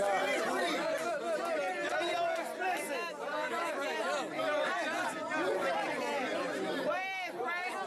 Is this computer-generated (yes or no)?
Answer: no